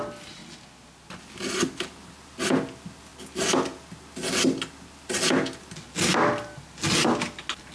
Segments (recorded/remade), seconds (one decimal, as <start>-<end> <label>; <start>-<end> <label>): 0.0-7.7 recorded